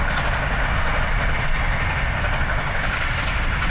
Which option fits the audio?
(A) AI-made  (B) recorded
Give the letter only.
B